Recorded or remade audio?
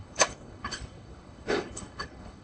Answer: remade